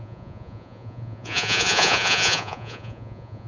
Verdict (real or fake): fake